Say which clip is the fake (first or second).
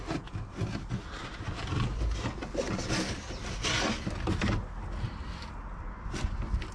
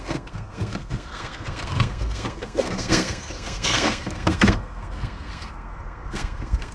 second